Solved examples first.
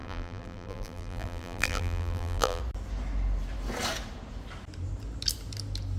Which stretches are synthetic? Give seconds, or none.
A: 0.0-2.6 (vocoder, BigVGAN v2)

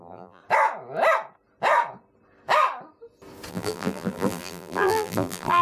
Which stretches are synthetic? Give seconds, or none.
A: 0.0-0.4 (vocoder, BigVGAN v2); 3.5-5.6